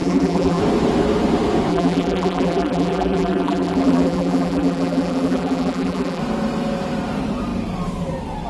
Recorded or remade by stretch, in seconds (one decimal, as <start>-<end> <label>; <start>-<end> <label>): 0.0-0.6 remade; 0.6-1.7 recorded; 1.7-6.2 remade; 6.2-8.5 recorded